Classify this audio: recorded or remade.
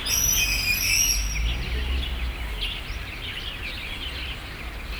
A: recorded